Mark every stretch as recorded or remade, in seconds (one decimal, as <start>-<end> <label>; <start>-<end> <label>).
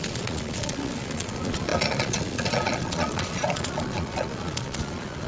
0.0-5.3 remade